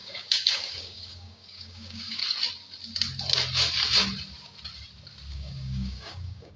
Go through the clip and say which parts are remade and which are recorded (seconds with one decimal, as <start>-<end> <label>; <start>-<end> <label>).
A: 0.0-2.2 remade; 2.2-5.3 recorded; 5.3-6.6 remade